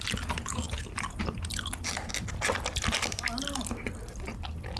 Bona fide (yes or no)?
yes